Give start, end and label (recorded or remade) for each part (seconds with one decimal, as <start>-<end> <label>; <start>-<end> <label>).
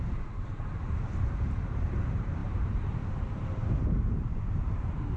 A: 0.0-5.2 remade